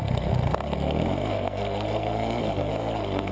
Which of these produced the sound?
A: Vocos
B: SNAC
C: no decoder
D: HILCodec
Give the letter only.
B